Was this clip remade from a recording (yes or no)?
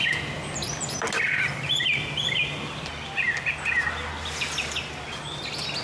no